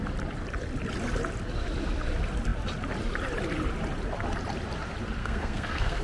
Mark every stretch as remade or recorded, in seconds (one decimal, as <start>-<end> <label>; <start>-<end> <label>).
0.0-5.2 recorded; 5.2-6.0 remade